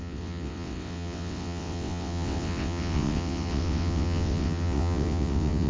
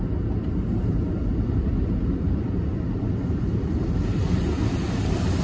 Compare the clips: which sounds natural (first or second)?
second